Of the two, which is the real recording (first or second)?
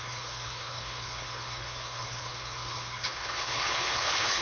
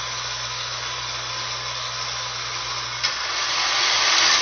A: second